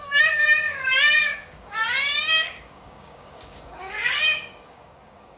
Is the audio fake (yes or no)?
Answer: yes